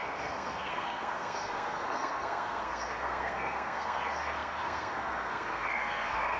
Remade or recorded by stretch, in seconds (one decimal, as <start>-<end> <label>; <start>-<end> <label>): 0.0-6.4 remade